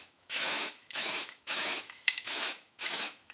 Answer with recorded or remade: remade